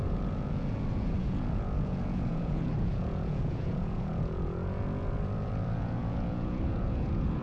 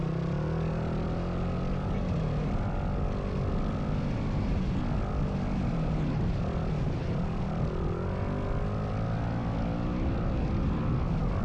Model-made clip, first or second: first